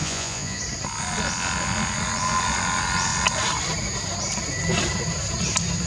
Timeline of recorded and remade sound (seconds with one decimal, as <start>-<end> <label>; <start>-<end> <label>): 0.0-0.6 remade; 0.6-5.9 recorded